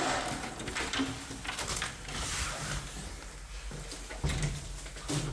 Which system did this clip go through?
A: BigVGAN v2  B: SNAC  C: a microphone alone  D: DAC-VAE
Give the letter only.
C